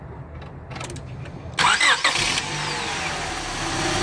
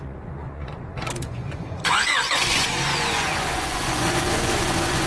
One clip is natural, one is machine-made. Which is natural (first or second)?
first